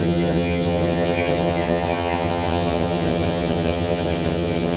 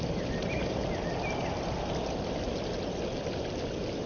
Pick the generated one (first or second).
first